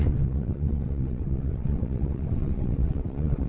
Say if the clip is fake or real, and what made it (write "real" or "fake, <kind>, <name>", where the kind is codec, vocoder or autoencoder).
fake, vocoder, WaveNeXt